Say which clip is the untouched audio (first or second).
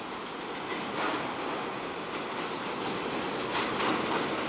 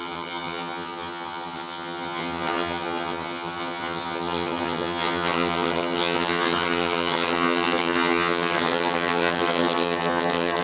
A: first